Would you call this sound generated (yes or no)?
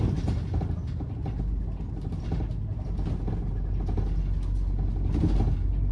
no